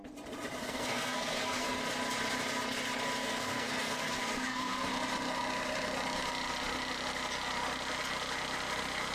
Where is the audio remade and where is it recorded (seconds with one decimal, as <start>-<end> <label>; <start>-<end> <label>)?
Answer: 0.0-0.6 recorded; 0.6-1.8 remade; 1.8-3.2 recorded; 3.2-4.9 remade; 4.9-9.1 recorded